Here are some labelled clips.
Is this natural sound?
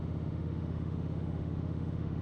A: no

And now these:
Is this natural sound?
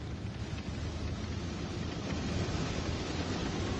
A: yes